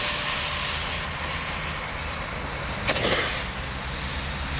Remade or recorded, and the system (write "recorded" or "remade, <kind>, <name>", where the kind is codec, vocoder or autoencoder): recorded